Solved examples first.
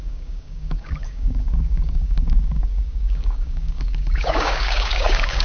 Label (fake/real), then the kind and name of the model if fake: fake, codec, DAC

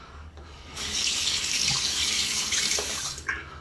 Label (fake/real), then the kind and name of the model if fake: fake, codec, DAC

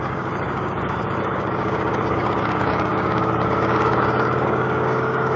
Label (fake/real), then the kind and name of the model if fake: fake, codec, DAC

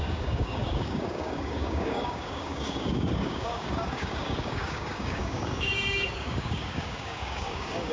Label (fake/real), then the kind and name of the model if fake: fake, codec, DAC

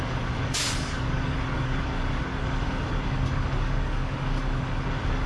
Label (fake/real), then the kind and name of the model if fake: fake, codec, DAC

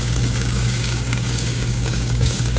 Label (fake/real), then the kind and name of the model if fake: fake, codec, DAC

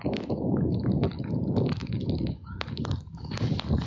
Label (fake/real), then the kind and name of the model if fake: fake, codec, DAC